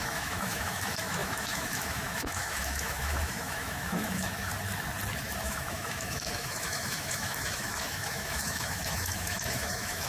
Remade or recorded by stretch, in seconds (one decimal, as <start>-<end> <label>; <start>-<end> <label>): 0.0-4.5 remade; 4.5-5.4 recorded; 5.4-10.1 remade